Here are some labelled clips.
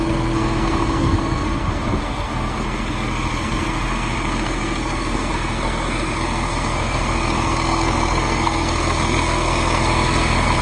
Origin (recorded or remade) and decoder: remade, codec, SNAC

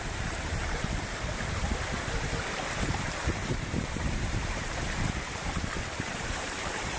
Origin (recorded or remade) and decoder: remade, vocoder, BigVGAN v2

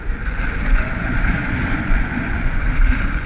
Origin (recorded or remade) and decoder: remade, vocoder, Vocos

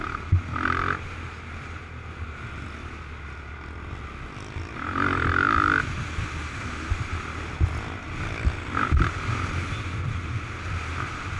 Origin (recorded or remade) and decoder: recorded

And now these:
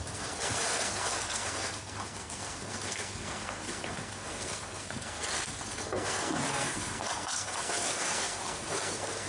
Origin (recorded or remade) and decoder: remade, codec, SNAC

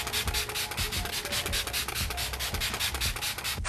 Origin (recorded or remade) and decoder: recorded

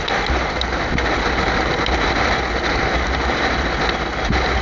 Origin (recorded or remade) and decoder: recorded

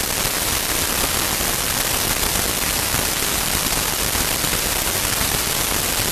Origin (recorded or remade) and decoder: recorded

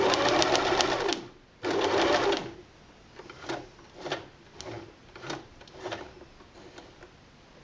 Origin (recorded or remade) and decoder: recorded